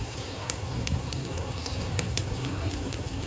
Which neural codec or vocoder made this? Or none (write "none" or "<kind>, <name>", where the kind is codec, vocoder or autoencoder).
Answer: codec, SNAC